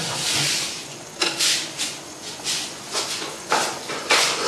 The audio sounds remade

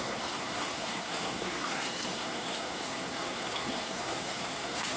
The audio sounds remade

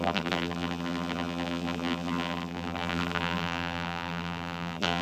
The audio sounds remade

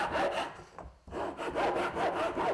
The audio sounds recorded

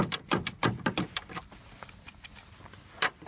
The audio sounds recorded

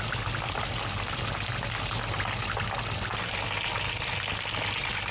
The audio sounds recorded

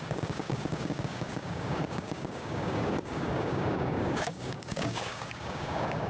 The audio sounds remade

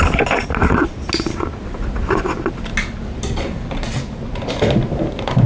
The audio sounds recorded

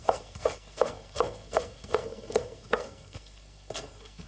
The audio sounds remade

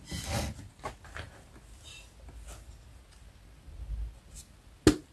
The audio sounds recorded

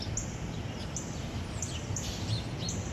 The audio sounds recorded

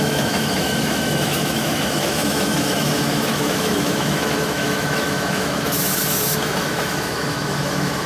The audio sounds remade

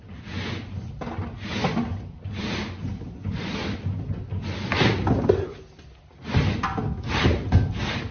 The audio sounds recorded